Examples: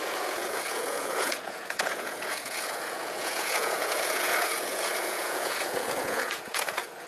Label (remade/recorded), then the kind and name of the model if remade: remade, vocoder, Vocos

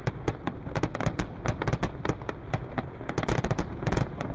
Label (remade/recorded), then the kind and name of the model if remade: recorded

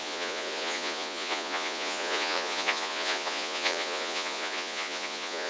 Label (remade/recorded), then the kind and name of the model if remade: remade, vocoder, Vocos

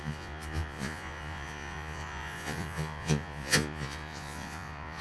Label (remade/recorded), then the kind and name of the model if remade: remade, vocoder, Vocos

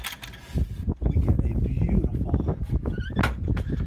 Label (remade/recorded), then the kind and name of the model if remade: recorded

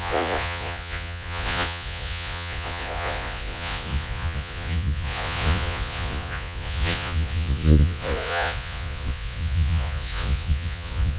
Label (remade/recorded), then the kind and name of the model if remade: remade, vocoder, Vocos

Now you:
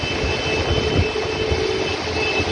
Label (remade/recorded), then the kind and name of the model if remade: recorded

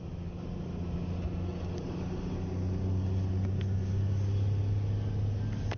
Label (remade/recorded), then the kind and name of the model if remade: recorded